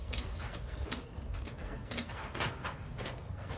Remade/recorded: remade